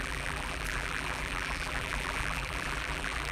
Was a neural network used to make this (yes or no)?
yes